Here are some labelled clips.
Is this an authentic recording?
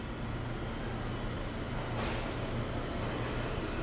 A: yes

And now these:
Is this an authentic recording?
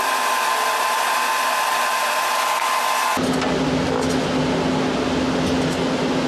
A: yes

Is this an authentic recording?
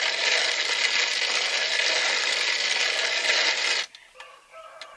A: yes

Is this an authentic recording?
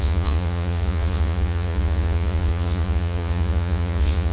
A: no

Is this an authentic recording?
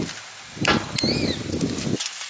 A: yes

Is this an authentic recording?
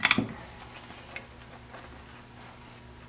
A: yes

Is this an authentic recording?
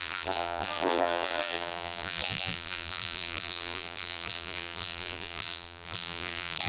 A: no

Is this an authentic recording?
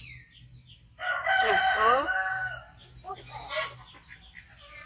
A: yes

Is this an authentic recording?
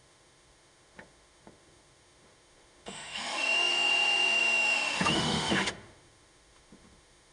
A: no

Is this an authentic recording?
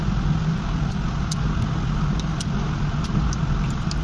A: yes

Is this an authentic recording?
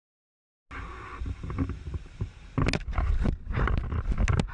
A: yes